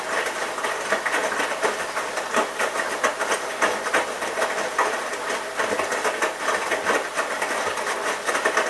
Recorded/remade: recorded